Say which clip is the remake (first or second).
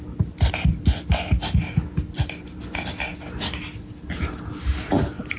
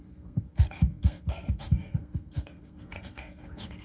second